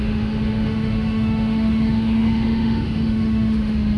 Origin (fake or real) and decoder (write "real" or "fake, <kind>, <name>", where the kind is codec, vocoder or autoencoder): fake, autoencoder, DAC-VAE